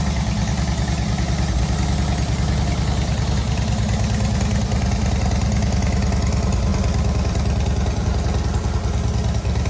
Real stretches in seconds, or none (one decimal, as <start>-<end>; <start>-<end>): 0.0-6.7; 8.1-9.7